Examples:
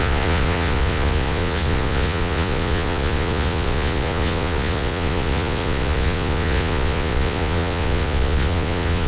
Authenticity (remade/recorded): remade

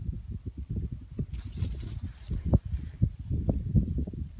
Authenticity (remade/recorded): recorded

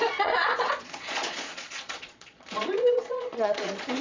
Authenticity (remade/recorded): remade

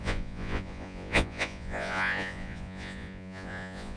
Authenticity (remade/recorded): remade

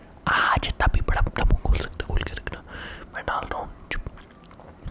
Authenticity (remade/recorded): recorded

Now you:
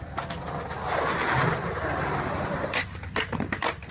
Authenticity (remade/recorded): recorded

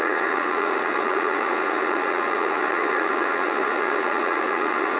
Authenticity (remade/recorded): remade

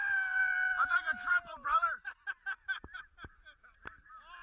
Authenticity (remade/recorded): recorded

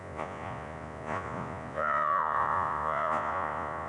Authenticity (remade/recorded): remade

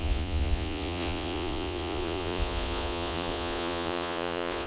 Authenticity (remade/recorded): remade